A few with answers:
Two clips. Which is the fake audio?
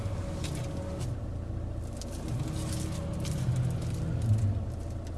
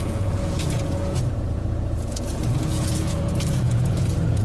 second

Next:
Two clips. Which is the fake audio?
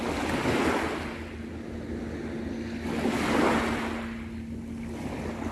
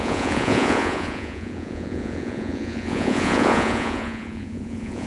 second